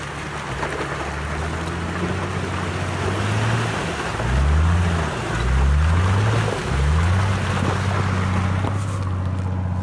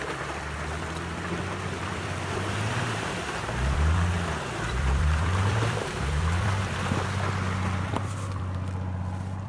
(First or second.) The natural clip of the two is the first